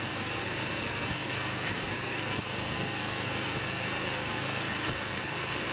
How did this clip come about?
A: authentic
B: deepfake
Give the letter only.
B